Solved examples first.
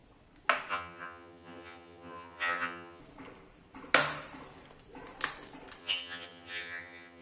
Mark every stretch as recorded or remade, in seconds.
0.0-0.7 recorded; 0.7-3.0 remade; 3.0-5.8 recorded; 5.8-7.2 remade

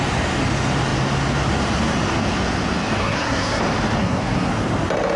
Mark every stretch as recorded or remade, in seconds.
0.0-3.0 recorded; 3.0-3.6 remade; 3.6-4.0 recorded; 4.0-4.5 remade; 4.5-5.2 recorded

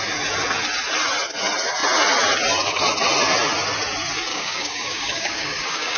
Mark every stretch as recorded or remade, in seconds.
0.0-4.3 recorded; 4.3-6.0 remade